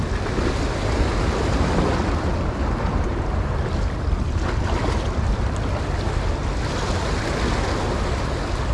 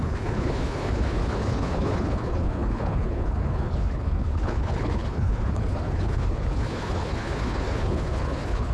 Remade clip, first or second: second